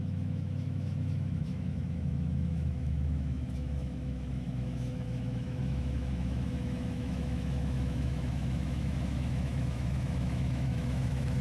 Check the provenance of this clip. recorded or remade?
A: remade